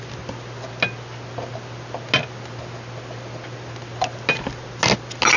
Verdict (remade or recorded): recorded